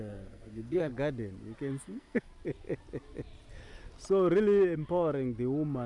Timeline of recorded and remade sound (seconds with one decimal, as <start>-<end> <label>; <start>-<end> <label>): 0.0-0.9 remade; 0.9-1.8 recorded; 1.8-2.3 remade; 2.3-5.9 recorded